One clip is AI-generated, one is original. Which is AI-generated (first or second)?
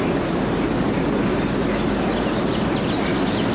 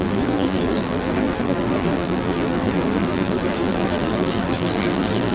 second